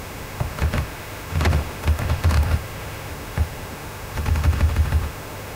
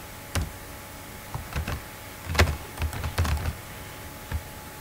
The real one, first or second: second